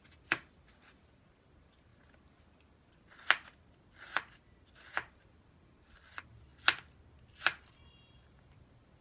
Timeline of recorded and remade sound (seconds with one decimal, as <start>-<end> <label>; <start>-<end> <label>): 0.0-1.9 remade; 1.9-4.0 recorded; 4.0-6.5 remade; 6.5-7.2 recorded; 7.2-9.0 remade